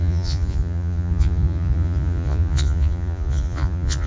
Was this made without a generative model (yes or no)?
no